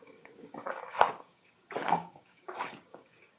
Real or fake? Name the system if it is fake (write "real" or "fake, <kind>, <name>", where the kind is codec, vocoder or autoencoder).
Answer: fake, codec, DAC